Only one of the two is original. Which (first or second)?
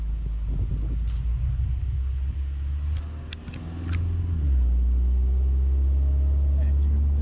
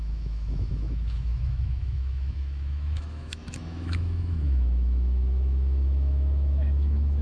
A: first